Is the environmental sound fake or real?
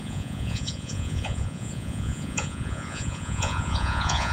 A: fake